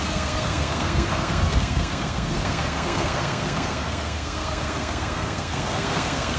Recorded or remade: remade